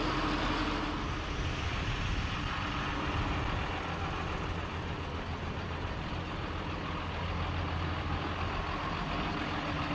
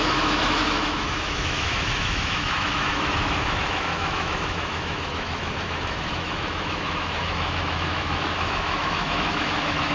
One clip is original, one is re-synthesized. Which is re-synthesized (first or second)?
second